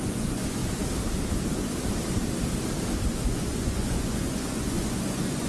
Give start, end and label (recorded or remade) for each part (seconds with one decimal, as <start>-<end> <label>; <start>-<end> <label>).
0.0-0.6 remade; 0.6-3.1 recorded; 3.1-5.5 remade